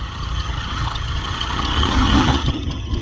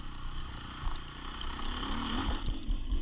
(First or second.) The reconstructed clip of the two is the first